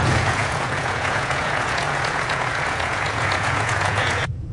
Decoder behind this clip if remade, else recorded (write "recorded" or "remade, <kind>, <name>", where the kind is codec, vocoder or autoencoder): remade, vocoder, Vocos